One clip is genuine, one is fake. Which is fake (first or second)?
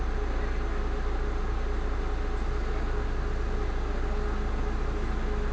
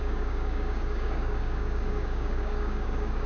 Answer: second